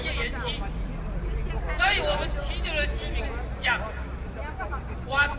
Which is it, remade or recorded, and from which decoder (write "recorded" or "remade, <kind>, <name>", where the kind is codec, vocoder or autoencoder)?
recorded